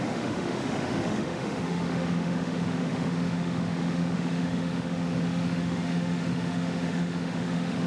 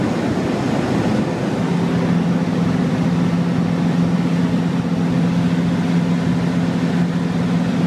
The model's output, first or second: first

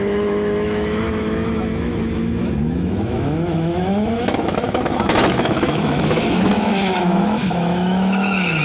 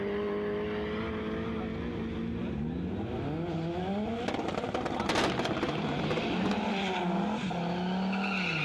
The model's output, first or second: first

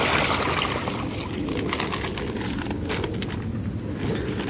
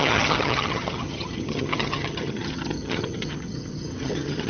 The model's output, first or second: second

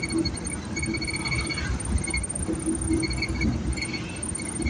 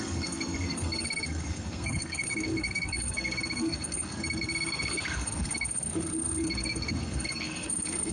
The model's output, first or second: second